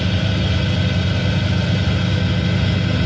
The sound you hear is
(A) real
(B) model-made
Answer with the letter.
A